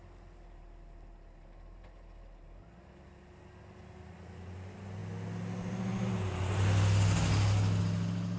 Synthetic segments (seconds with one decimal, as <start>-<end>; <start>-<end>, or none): none